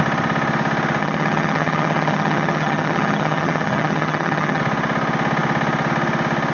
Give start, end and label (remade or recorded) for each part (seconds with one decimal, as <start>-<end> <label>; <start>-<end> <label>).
0.0-1.0 recorded; 1.0-4.6 remade; 4.6-6.5 recorded